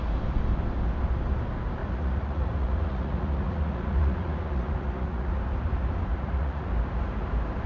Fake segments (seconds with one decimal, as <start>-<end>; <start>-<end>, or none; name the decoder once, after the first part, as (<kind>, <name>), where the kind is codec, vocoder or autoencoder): 1.8-5.3 (vocoder, Vocos); 6.1-6.7